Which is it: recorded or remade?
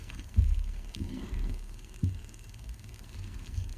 remade